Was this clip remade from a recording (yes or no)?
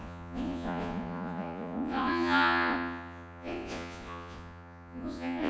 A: yes